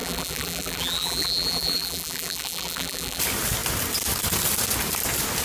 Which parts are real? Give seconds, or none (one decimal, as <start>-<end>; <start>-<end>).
3.2-5.4